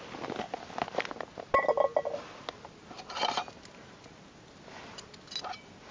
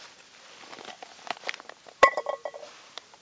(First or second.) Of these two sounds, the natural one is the first